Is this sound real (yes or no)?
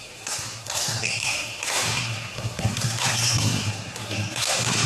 no